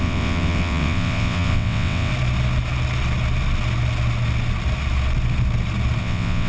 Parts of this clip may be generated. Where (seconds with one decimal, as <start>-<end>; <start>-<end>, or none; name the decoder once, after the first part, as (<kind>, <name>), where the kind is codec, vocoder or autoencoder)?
0.0-2.1 (vocoder, WaveNeXt); 6.0-6.5